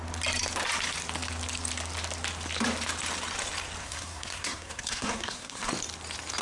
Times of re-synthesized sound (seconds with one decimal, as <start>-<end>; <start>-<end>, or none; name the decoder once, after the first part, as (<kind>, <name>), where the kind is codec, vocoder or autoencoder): 3.8-5.7 (codec, SNAC)